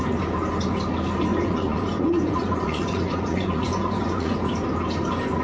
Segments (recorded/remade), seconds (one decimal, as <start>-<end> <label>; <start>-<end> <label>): 0.0-1.3 recorded; 1.3-4.4 remade; 4.4-5.4 recorded